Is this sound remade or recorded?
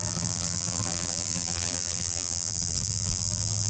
remade